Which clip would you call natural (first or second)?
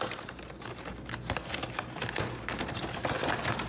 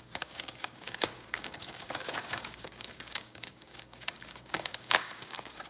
first